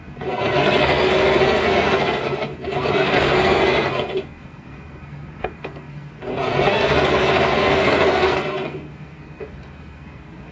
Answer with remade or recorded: remade